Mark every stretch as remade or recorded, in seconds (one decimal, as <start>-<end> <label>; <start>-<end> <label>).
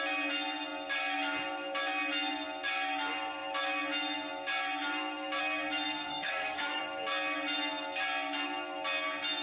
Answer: 0.0-6.1 recorded; 6.1-6.8 remade; 6.8-9.4 recorded